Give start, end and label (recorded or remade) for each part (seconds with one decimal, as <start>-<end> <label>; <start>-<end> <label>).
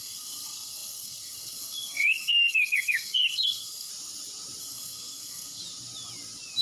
0.0-3.9 remade; 3.9-4.6 recorded; 4.6-5.6 remade; 5.6-6.6 recorded